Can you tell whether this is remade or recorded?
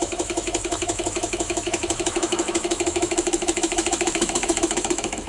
remade